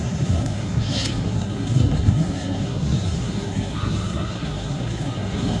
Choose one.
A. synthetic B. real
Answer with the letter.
A